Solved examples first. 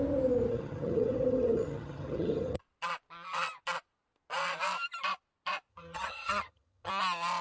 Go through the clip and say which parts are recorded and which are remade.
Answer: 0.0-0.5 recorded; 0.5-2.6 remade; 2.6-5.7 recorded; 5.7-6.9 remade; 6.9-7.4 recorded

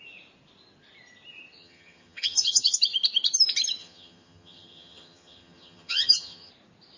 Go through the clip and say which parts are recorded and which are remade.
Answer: 0.0-1.6 recorded; 1.6-2.7 remade; 2.7-3.8 recorded; 3.8-6.5 remade; 6.5-7.0 recorded